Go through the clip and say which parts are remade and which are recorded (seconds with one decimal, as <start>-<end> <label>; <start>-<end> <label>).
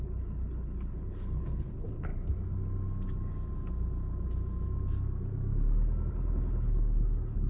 0.0-2.1 remade; 2.1-6.1 recorded; 6.1-7.5 remade